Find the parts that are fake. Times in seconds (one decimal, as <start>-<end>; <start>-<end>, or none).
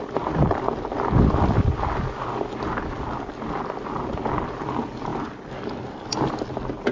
none